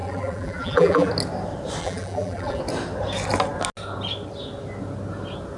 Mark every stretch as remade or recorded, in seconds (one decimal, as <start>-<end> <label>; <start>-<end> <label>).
0.0-1.1 remade; 1.1-1.8 recorded; 1.8-2.6 remade; 2.6-5.6 recorded